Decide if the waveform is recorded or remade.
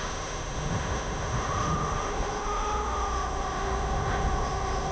remade